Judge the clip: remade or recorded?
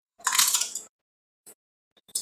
remade